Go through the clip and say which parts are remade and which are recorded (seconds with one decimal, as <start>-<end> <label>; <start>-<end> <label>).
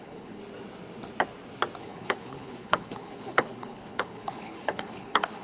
0.0-0.4 remade; 0.4-1.8 recorded; 1.8-5.4 remade